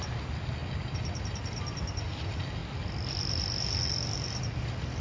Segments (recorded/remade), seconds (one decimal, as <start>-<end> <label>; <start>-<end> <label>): 0.0-5.0 recorded